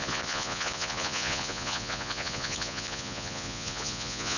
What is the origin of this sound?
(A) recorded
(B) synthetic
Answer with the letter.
B